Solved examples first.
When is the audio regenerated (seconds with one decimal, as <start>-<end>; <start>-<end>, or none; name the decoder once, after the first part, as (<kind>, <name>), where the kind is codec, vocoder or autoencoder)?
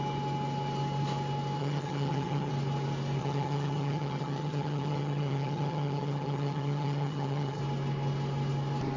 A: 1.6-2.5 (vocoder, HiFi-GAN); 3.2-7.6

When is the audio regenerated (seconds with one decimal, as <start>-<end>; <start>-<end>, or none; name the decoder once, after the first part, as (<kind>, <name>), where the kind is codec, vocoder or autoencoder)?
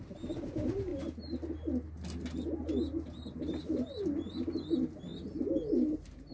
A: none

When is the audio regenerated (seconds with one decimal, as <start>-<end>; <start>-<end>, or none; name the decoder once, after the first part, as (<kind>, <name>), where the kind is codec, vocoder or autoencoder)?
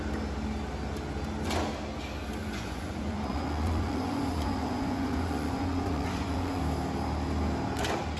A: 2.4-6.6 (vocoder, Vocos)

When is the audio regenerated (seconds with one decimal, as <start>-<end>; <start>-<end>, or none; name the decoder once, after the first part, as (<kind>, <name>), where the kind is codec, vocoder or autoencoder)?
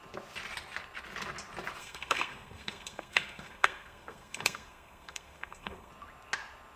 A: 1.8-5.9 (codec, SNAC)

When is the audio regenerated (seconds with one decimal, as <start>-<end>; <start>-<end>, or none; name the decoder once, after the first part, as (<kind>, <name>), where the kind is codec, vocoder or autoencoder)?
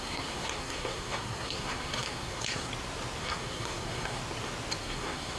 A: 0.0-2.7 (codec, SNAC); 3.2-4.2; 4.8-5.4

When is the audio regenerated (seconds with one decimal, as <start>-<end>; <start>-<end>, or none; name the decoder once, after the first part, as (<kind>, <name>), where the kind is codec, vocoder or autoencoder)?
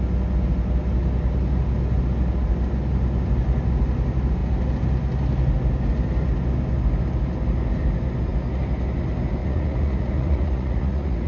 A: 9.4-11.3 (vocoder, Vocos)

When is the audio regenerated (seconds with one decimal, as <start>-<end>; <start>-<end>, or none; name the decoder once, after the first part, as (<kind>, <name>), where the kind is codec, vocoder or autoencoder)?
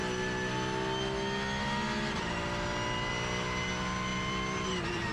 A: 4.1-5.1 (vocoder, BigVGAN v2)